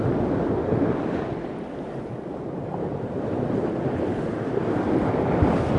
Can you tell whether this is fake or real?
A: real